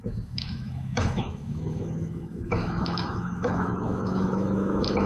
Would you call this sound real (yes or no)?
no